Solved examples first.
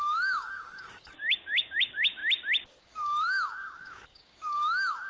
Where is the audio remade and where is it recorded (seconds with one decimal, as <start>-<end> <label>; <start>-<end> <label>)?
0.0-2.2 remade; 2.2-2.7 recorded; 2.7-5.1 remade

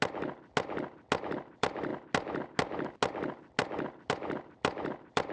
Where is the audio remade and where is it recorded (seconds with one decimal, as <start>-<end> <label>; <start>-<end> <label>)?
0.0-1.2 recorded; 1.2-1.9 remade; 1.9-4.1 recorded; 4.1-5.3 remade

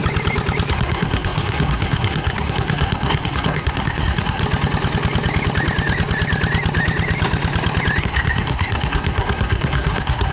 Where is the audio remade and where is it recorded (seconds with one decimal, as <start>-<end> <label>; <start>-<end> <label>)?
0.0-0.7 recorded; 0.7-4.4 remade; 4.4-8.0 recorded; 8.0-10.3 remade

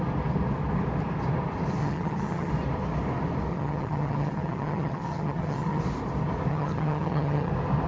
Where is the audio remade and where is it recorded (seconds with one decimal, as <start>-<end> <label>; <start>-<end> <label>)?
0.0-1.8 recorded; 1.8-2.5 remade; 2.5-3.5 recorded; 3.5-5.8 remade; 5.8-6.5 recorded; 6.5-7.5 remade; 7.5-7.9 recorded